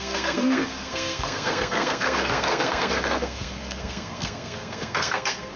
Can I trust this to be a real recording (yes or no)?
no